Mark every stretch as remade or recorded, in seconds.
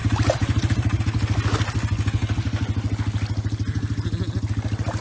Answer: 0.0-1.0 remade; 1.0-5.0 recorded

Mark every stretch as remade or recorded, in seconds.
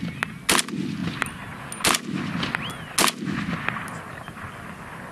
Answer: 0.0-5.1 recorded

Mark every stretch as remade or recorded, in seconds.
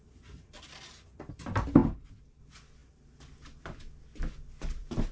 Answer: 0.0-5.1 recorded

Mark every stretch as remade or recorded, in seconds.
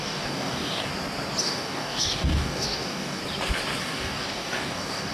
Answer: 0.0-0.9 remade; 0.9-1.4 recorded; 1.4-3.2 remade; 3.2-3.8 recorded; 3.8-5.1 remade